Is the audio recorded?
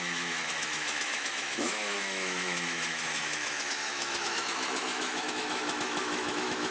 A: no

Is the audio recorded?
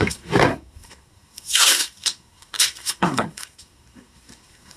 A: no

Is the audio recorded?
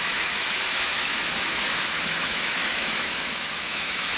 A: no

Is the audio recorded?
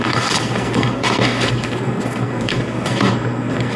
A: no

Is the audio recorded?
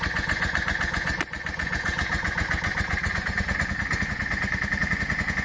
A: no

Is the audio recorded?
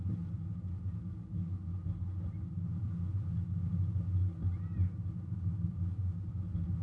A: yes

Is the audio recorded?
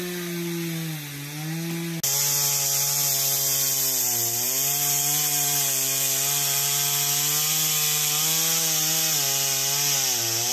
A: yes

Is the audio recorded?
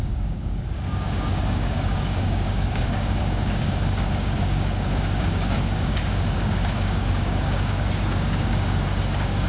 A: no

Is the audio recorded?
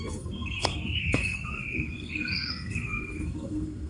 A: no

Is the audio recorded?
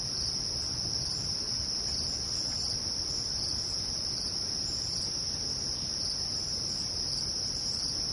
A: yes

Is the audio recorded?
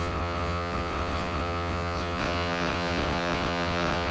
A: no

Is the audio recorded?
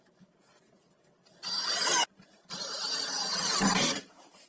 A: yes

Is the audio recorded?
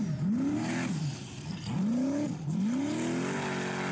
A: yes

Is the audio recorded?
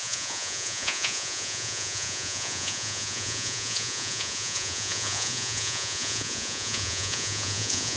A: no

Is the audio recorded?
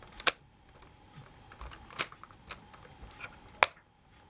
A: yes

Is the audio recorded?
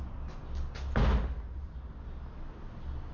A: yes